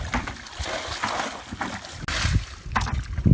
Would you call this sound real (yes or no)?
yes